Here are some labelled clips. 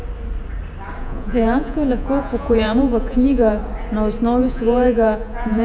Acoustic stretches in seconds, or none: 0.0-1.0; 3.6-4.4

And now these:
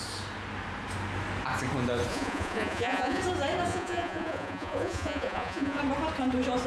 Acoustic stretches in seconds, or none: 0.0-2.1; 3.2-3.7; 5.8-6.7

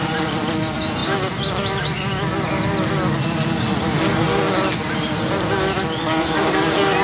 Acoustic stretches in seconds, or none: 0.0-7.0